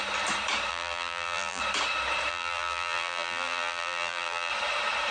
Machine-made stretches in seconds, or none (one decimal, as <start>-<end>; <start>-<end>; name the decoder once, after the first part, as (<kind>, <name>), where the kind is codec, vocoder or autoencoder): 0.7-1.6 (vocoder, BigVGAN v2); 2.3-4.5